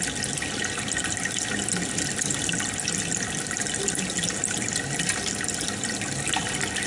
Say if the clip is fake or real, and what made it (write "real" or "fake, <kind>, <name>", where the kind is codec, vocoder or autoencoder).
real